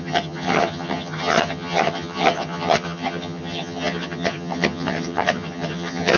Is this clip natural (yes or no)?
no